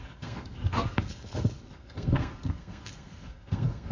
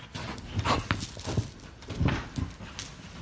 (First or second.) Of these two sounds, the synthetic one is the first